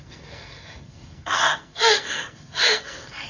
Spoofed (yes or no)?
yes